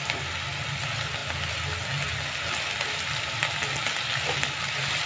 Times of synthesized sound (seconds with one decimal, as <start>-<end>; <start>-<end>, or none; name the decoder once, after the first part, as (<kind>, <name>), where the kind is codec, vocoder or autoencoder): none